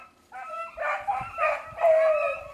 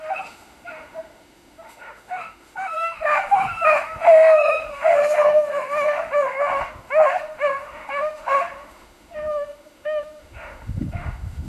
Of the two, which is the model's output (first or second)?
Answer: second